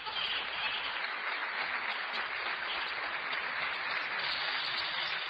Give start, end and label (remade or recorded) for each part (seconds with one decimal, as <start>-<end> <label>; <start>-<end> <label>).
0.0-5.3 recorded